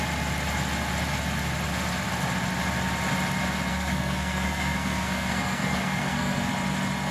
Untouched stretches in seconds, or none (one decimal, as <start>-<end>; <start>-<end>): 0.0-3.7; 6.5-7.1